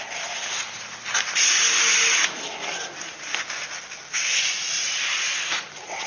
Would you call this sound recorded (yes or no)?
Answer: yes